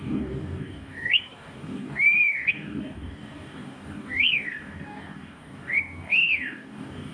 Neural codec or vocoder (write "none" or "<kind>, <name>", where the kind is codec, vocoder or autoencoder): codec, DAC